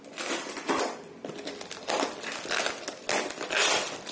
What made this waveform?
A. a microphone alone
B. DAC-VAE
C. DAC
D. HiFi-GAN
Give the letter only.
A